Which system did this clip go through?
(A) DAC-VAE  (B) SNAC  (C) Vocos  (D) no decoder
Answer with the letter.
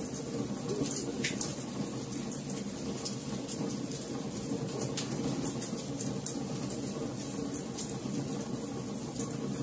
D